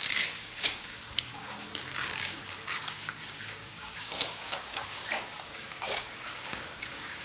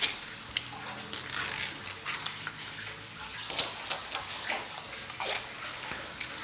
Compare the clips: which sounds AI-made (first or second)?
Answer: first